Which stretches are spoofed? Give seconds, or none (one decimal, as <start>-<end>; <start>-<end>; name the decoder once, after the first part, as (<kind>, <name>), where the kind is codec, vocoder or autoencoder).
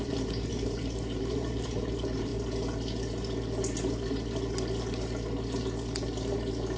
0.0-2.3 (vocoder, BigVGAN v2)